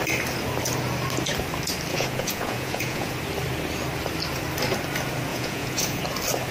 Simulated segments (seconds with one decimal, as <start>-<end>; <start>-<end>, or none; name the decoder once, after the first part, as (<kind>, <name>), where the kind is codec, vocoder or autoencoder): 1.9-3.1 (vocoder, Vocos); 5.3-6.0